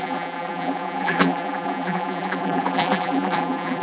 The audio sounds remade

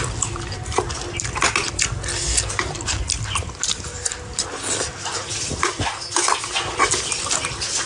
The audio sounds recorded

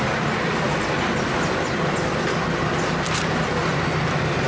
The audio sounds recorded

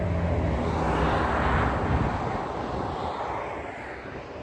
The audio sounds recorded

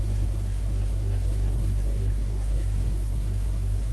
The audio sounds remade